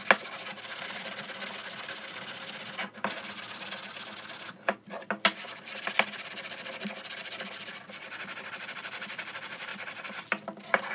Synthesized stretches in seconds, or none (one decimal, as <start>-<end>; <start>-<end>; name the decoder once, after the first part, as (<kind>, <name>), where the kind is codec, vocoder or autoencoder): none